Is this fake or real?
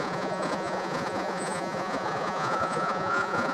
fake